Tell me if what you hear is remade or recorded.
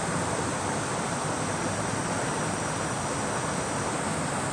recorded